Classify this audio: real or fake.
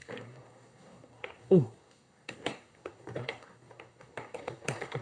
fake